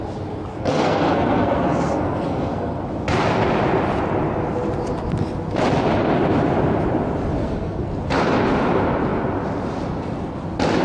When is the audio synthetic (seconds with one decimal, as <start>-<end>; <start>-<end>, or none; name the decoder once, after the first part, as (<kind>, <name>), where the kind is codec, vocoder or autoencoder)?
0.5-2.8 (codec, SNAC); 7.4-7.9